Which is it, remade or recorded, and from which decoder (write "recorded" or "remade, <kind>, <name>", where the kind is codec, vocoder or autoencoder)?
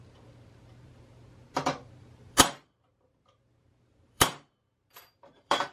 remade, vocoder, BigVGAN v2